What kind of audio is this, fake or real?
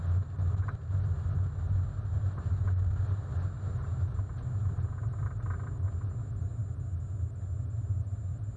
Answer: real